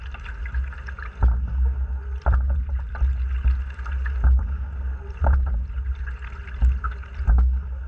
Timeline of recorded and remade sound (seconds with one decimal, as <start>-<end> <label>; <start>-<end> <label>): 0.0-6.6 recorded; 6.6-7.3 remade; 7.3-7.9 recorded